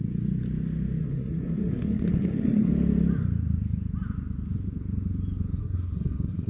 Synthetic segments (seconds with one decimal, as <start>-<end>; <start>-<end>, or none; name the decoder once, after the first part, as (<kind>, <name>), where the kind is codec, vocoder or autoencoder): 1.0-2.7 (codec, SNAC); 5.6-6.5

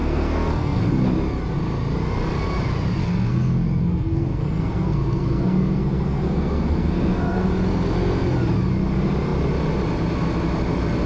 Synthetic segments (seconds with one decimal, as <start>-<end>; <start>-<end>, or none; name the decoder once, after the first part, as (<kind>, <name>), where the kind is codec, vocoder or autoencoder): 0.0-0.9 (codec, SNAC); 3.0-7.5

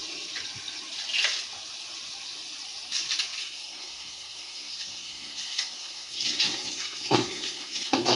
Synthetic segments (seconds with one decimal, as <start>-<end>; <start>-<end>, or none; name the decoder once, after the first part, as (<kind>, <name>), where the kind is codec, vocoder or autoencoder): 3.4-8.2 (codec, SNAC)

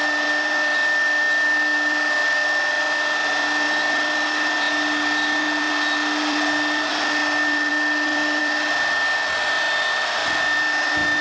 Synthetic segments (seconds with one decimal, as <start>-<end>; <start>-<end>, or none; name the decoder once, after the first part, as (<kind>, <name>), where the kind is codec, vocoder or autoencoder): none

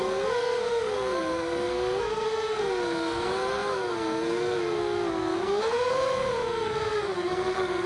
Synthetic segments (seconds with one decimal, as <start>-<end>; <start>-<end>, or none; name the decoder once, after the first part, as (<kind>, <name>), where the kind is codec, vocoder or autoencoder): 0.0-7.9 (codec, SNAC)

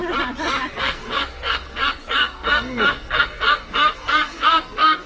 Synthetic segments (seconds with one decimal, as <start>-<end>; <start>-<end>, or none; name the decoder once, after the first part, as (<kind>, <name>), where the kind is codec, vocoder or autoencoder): 0.8-5.1 (codec, SNAC)

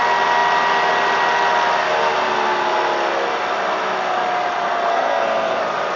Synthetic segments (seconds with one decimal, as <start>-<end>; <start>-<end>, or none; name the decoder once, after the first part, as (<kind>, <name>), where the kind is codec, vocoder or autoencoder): 4.9-5.6 (codec, SNAC)

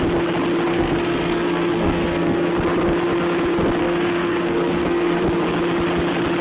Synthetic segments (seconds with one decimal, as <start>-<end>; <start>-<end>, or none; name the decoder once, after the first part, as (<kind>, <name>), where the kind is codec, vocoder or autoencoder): 0.7-2.5 (codec, SNAC); 3.8-5.2